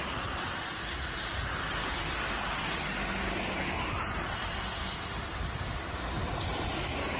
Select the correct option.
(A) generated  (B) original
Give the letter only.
B